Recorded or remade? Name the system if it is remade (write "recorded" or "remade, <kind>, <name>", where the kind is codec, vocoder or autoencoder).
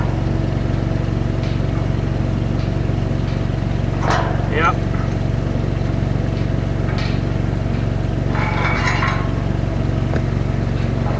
recorded